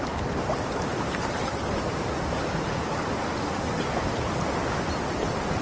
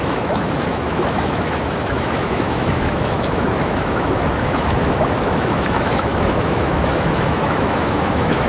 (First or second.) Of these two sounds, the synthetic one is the second